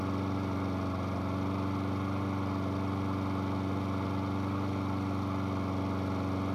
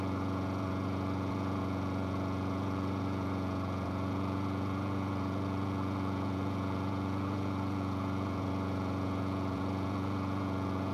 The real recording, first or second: first